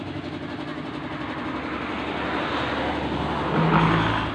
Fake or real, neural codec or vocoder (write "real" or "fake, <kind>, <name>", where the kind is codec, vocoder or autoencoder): real